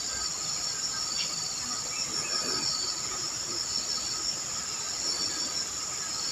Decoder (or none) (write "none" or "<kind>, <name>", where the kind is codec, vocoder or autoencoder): none